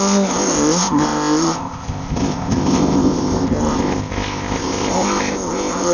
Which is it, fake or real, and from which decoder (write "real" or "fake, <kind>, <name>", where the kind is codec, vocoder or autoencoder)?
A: fake, codec, ZipCodec